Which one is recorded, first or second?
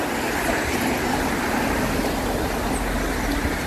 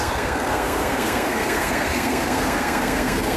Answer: first